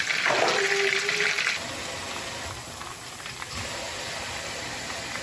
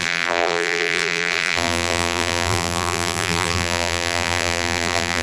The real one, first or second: first